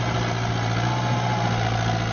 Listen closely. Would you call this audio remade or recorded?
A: recorded